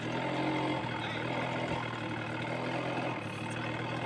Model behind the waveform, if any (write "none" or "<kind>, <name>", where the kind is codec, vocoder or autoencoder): none